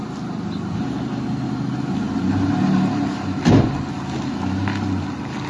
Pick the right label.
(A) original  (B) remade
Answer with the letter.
A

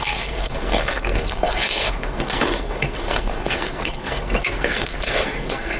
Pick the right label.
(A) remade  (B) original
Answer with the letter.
A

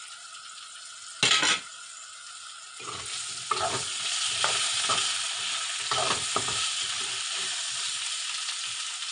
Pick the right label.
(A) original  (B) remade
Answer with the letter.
A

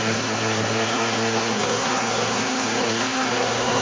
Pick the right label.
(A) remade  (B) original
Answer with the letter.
A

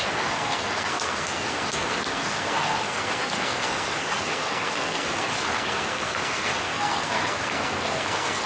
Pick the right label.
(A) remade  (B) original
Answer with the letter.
A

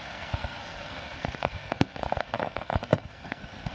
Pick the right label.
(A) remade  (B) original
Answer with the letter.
A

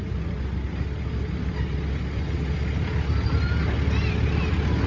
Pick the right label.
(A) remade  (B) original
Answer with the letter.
B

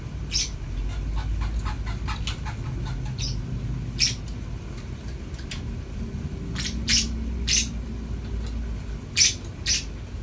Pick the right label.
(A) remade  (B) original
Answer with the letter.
B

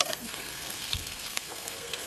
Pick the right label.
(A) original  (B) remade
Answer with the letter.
B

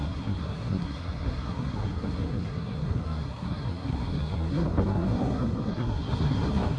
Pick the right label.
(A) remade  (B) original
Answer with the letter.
A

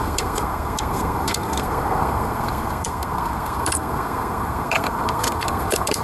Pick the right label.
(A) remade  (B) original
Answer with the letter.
A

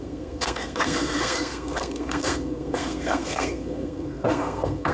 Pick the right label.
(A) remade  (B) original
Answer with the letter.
A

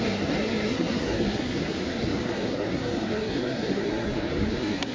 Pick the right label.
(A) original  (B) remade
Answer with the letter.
B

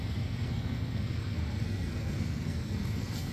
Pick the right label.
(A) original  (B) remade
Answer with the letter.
B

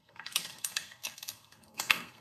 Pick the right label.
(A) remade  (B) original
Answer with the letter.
A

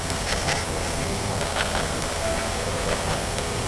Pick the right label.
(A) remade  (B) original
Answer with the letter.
A